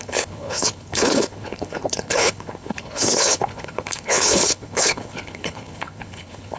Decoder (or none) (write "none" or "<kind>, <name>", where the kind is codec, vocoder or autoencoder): codec, HILCodec